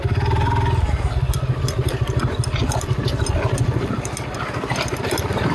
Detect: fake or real real